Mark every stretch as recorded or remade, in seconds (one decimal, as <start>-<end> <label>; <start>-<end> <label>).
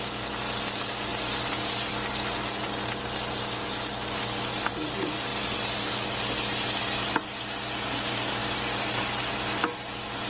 0.0-10.3 recorded